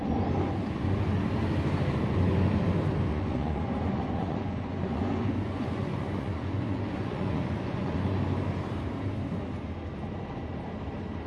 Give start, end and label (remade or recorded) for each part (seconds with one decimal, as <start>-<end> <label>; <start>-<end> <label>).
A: 0.0-3.1 recorded; 3.1-8.2 remade; 8.2-11.3 recorded